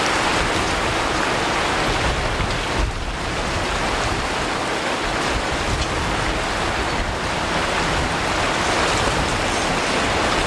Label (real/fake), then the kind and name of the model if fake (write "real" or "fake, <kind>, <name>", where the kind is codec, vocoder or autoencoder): real